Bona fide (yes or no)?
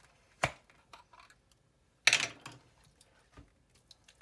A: yes